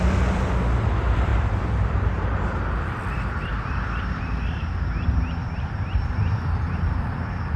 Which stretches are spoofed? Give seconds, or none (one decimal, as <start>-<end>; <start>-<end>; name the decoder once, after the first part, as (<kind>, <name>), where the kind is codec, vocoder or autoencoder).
0.0-7.6 (vocoder, BigVGAN v2)